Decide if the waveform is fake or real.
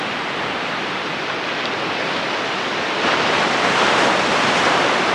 fake